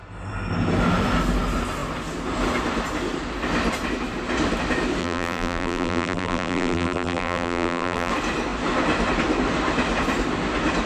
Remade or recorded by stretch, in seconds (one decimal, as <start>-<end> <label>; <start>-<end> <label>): 0.0-5.0 recorded; 5.0-8.1 remade; 8.1-10.9 recorded